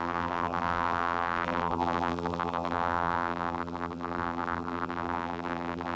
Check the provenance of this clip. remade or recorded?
remade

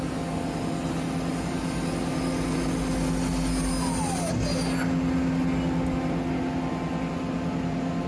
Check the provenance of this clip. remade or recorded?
recorded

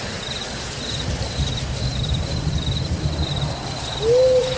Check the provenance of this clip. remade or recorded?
recorded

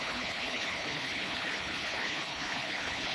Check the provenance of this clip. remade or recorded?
remade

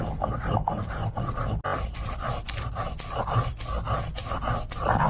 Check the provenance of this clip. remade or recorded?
recorded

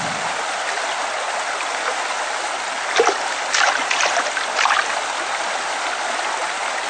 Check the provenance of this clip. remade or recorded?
recorded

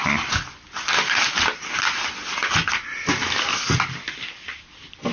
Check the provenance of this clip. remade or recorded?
recorded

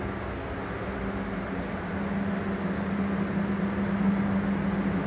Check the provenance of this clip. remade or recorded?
recorded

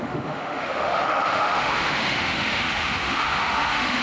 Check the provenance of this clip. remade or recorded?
remade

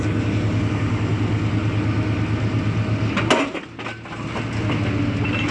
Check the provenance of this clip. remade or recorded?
recorded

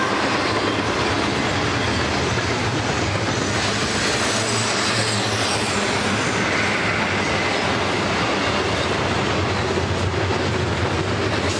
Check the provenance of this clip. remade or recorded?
recorded